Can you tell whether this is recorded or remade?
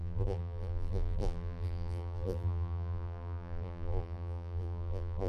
remade